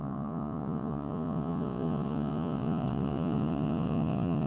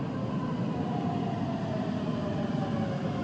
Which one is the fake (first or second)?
first